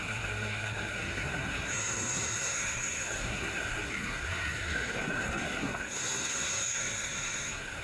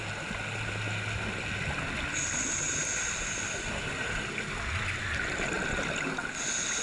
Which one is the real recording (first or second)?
second